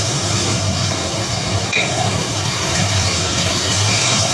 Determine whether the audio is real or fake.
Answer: fake